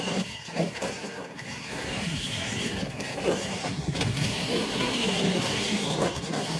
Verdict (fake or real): fake